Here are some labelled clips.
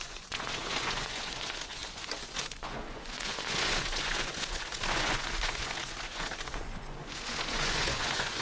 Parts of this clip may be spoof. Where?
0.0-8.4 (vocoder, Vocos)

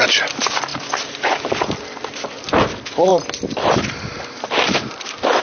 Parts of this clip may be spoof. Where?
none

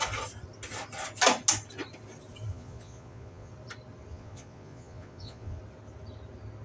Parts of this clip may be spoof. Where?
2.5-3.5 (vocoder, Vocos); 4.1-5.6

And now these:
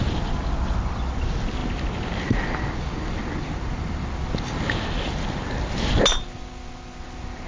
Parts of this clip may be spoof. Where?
none

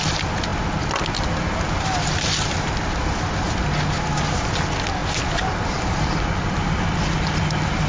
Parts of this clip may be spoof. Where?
none

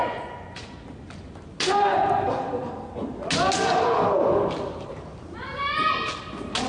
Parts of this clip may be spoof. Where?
0.0-0.6 (vocoder, Vocos)